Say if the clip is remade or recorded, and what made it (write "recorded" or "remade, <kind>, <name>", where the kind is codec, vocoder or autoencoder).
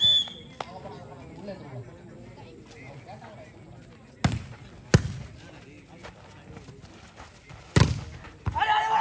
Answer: recorded